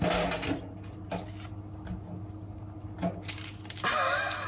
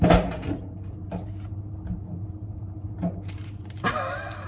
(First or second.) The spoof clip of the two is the second